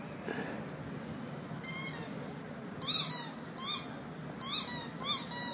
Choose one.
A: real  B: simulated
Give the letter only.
A